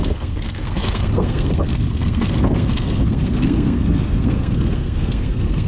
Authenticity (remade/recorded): remade